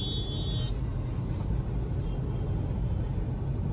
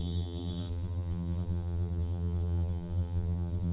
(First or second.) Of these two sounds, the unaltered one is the first